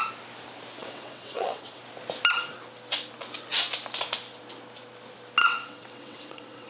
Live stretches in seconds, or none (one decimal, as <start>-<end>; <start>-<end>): 0.0-0.8; 1.8-5.4